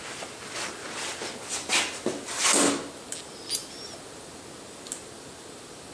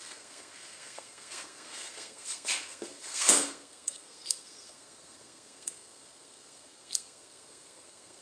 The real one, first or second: first